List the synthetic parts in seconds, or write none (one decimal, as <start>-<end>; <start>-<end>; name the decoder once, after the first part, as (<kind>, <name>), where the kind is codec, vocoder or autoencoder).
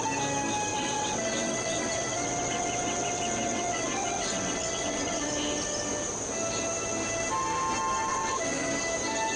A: 0.7-5.3 (vocoder, WaveNeXt); 8.1-8.7